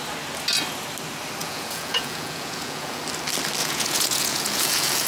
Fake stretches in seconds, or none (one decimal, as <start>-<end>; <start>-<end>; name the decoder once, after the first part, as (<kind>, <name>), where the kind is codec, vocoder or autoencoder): 1.4-3.0 (vocoder, Vocos); 3.6-5.1

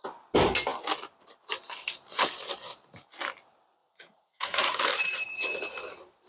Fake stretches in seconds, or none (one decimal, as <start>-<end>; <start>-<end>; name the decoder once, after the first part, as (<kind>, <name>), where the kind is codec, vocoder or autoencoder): 3.8-4.8 (vocoder, Vocos)

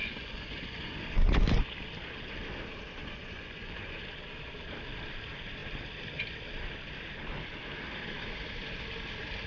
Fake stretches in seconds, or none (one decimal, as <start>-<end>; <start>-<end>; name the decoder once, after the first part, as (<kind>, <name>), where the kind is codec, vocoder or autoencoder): 0.0-1.3 (vocoder, Vocos); 3.0-4.0